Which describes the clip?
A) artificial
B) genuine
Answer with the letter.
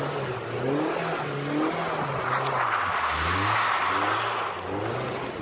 B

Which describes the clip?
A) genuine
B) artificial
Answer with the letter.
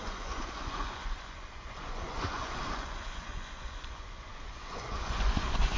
B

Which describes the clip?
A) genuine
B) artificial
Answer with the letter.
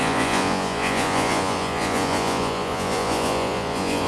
B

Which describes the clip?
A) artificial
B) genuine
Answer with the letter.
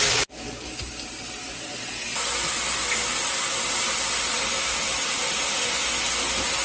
B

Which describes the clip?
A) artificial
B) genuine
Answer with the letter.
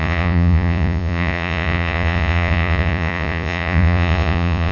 A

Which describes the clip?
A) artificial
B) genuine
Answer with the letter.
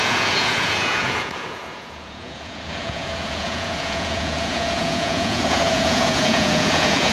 A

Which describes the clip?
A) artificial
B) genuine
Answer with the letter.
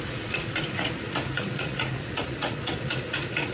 A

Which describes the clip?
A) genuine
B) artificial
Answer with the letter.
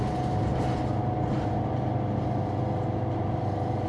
A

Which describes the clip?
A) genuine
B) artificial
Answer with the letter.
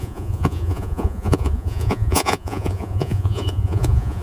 B